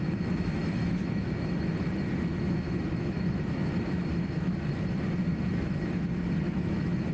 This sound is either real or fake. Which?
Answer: fake